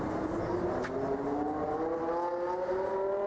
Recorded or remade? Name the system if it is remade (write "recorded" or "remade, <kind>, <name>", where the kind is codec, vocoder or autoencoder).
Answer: recorded